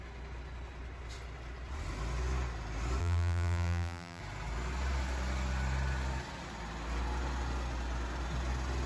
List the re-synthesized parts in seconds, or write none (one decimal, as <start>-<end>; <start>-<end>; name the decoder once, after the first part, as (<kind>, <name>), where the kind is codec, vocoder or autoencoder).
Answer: 3.0-4.2 (vocoder, BigVGAN v2)